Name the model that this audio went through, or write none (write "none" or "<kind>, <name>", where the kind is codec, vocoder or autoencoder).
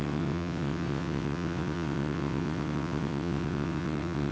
vocoder, WaveNeXt